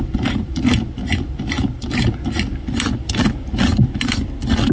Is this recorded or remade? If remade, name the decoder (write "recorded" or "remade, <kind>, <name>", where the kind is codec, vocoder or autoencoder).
remade, vocoder, BigVGAN v2